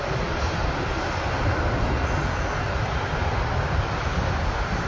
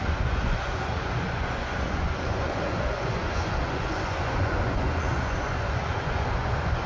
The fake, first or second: second